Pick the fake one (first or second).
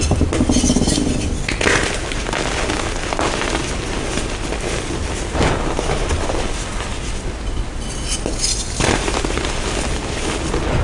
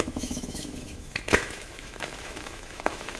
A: second